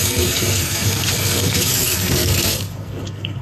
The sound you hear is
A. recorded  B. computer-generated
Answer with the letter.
B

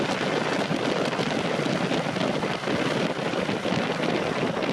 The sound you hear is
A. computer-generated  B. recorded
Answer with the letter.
B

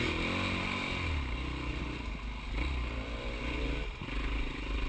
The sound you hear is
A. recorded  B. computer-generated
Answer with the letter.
A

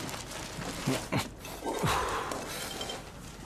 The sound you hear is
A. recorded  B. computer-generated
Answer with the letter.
A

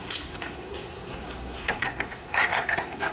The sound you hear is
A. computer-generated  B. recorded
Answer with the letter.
A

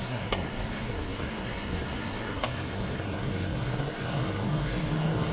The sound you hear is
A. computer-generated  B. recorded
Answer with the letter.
A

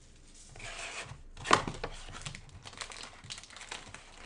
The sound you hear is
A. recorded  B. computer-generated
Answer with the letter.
A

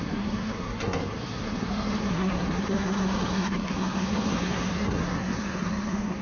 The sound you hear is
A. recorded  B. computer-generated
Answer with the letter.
B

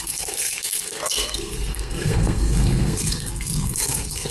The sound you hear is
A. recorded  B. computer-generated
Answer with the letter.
B